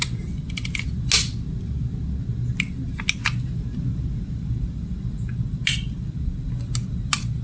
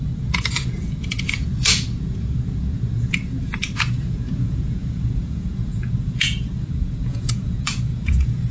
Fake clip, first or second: second